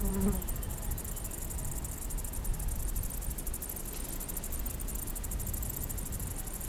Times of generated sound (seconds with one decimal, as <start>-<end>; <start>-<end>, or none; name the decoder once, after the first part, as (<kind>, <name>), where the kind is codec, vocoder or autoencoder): none